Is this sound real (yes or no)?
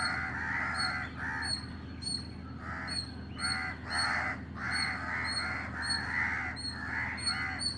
yes